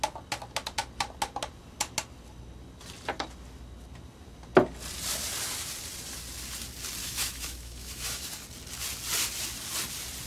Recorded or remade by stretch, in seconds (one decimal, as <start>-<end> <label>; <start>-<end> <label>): 0.0-7.0 recorded; 7.0-8.3 remade; 8.3-10.3 recorded